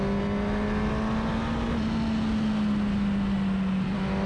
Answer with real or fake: real